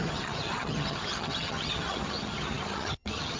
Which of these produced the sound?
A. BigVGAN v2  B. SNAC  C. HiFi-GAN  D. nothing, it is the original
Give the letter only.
C